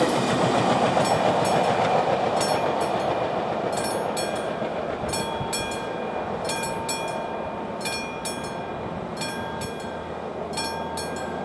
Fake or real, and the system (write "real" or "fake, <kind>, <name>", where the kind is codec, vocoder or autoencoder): real